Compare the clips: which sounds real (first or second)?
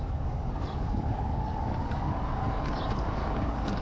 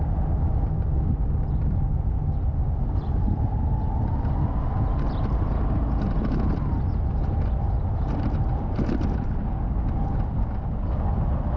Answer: second